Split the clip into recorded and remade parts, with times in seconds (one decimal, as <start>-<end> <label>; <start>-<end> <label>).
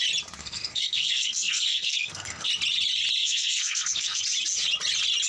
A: 0.0-0.4 recorded; 0.4-2.5 remade; 2.5-3.2 recorded; 3.2-4.2 remade; 4.2-5.3 recorded